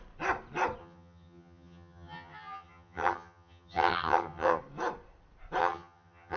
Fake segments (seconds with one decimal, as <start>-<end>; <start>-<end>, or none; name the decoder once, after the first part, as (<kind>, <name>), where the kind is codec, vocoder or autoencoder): 0.8-4.6 (vocoder, HiFi-GAN); 5.6-6.4

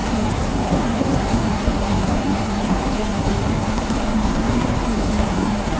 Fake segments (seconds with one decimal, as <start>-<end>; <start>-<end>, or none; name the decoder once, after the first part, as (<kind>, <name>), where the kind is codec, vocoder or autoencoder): 0.0-5.8 (codec, SNAC)

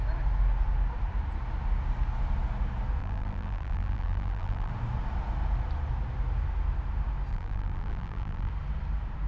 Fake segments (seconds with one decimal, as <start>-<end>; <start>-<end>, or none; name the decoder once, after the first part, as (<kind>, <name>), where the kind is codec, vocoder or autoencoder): 3.0-4.7 (vocoder, BigVGAN v2); 7.3-8.5

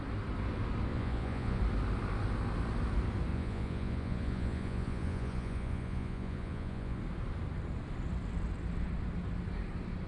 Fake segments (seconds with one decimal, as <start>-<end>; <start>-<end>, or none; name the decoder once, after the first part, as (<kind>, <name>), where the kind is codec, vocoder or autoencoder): 0.9-1.6 (vocoder, Vocos); 3.3-7.0

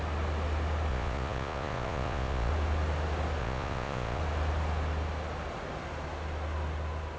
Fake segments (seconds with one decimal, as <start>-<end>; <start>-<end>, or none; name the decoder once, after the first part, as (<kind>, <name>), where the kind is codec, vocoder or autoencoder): 0.9-2.5 (vocoder, Vocos); 3.4-4.2